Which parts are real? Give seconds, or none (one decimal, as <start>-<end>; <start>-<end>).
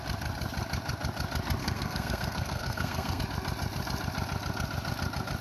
0.0-1.6; 3.2-5.4